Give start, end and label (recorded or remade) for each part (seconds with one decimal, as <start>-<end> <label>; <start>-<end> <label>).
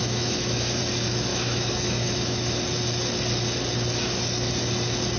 0.0-0.8 remade; 0.8-1.3 recorded; 1.3-2.6 remade; 2.6-5.2 recorded